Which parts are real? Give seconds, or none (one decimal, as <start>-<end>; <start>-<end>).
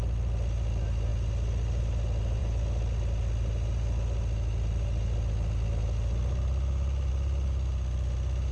0.0-8.5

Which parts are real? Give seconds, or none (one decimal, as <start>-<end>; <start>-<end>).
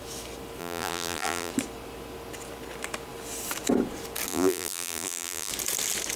0.0-0.6; 1.5-4.3; 5.5-6.2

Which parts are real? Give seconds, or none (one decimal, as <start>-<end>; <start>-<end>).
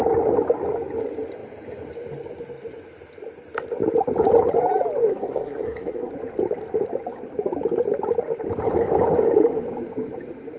0.0-5.1; 6.1-10.6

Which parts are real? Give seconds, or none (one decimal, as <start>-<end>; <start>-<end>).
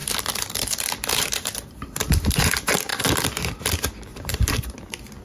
2.4-4.1